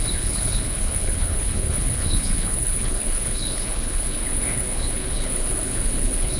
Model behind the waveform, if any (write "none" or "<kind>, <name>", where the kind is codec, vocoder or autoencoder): codec, HILCodec